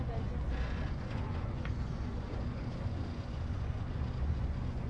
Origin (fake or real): fake